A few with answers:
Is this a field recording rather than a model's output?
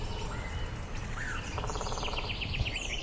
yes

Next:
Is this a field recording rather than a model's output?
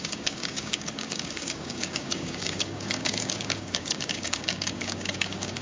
no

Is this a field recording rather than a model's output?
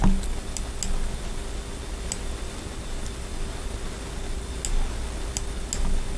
yes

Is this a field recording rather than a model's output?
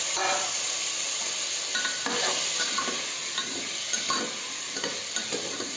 yes